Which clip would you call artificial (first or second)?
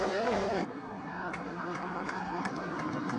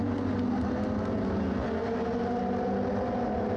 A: first